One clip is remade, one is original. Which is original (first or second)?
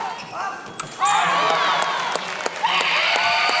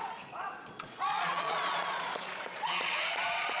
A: first